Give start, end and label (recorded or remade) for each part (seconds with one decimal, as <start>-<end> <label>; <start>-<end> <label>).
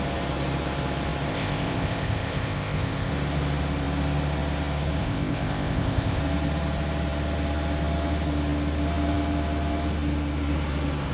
0.0-1.3 recorded; 1.3-3.1 remade; 3.1-5.0 recorded; 5.0-6.2 remade; 6.2-11.1 recorded